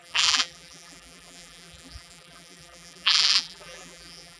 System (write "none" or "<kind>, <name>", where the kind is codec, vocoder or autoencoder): vocoder, BigVGAN v2